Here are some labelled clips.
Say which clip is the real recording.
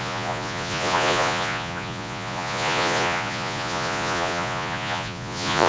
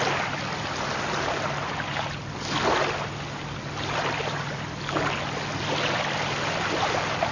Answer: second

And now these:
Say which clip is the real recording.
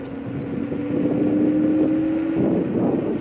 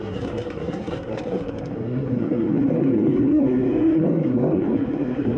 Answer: first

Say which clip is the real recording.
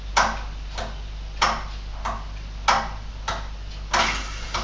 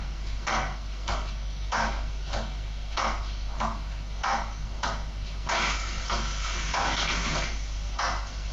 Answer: first